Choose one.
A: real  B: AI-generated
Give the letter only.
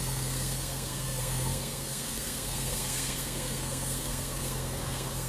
B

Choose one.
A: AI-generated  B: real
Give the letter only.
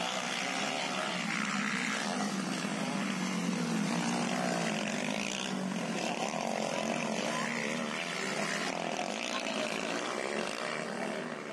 B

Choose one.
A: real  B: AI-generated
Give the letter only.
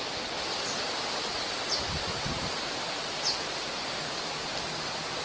A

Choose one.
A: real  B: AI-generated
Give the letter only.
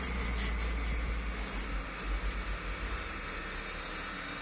A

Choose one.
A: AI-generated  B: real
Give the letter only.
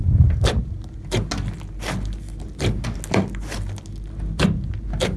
B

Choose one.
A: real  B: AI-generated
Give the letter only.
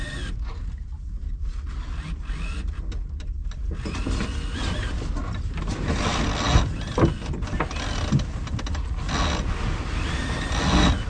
A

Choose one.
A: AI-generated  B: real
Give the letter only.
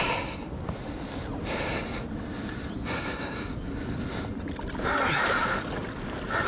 B